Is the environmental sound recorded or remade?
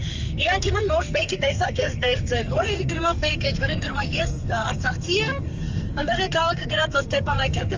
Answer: remade